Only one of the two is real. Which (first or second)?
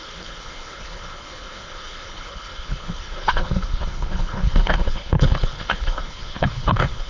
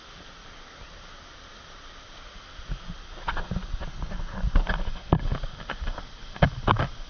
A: second